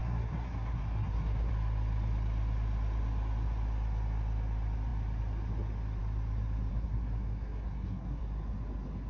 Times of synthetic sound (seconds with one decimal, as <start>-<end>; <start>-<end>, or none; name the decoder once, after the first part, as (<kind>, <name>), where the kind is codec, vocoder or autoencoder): 0.0-1.5 (codec, SNAC); 6.7-8.2